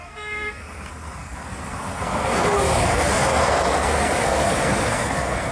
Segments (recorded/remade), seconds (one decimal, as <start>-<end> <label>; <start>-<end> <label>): 0.0-5.5 remade